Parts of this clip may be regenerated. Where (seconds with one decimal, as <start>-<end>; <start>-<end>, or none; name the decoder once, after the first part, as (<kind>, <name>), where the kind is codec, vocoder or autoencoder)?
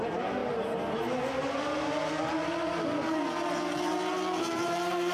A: none